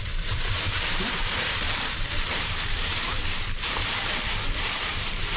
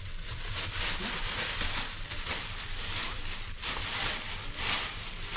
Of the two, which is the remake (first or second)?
first